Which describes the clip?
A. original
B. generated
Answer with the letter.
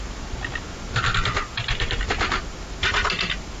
A